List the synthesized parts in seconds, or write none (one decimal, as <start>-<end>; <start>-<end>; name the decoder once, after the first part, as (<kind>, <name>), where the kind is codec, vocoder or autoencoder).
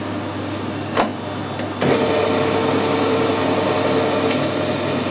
none